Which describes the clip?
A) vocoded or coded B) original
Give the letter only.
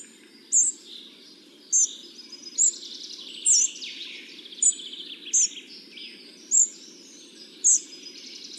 B